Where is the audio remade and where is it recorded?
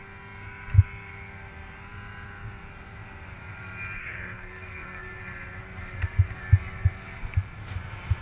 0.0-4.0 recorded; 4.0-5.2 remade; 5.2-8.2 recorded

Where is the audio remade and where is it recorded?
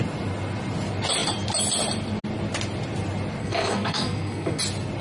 0.0-3.4 recorded; 3.4-4.6 remade; 4.6-5.0 recorded